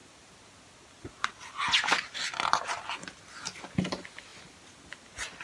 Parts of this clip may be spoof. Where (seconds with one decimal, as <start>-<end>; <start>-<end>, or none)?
none